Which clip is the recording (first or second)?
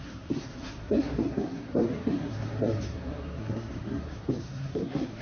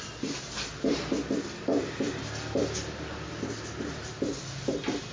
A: second